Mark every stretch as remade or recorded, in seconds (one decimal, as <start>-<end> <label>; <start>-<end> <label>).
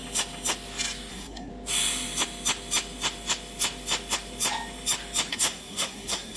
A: 0.0-1.1 recorded; 1.1-1.5 remade; 1.5-5.3 recorded; 5.3-6.4 remade